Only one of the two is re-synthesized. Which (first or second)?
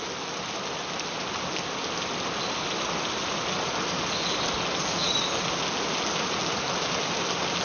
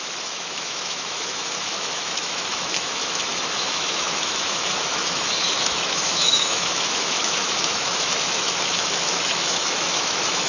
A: second